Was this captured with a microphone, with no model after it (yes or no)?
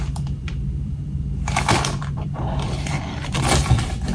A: no